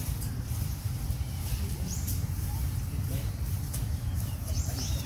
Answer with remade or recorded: remade